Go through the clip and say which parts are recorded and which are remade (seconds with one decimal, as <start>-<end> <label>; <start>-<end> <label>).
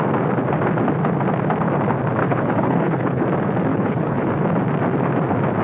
0.0-2.2 recorded; 2.2-3.2 remade; 3.2-3.7 recorded; 3.7-4.3 remade; 4.3-5.6 recorded